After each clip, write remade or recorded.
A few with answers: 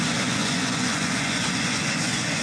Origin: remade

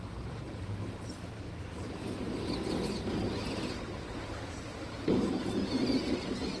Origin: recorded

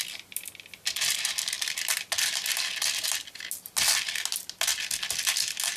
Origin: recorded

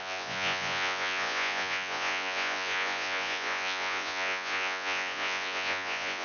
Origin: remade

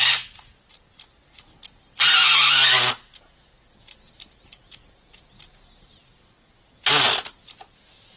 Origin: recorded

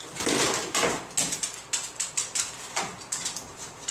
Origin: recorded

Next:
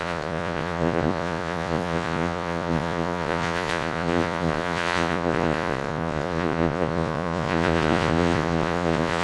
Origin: remade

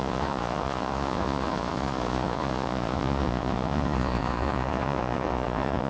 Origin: remade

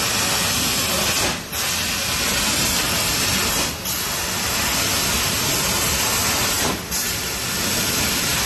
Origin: recorded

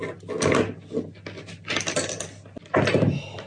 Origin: recorded